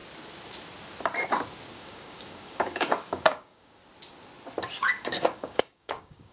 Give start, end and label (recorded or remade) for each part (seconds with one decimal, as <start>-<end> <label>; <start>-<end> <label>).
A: 0.0-1.7 recorded; 1.7-3.8 remade; 3.8-4.7 recorded; 4.7-6.3 remade